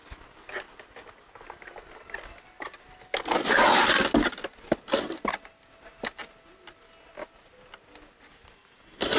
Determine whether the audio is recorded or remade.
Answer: recorded